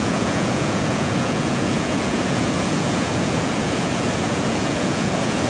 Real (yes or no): no